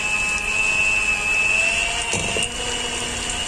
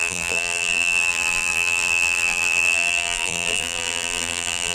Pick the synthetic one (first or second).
second